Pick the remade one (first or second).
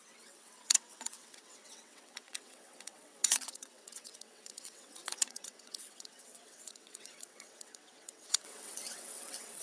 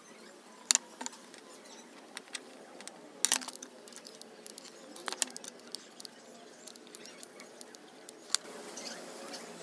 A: first